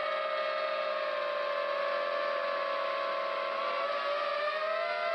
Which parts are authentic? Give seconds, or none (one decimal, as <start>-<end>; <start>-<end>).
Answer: 0.0-5.1